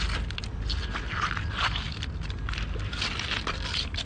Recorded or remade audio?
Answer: recorded